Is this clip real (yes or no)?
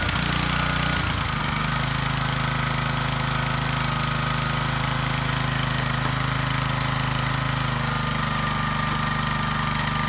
yes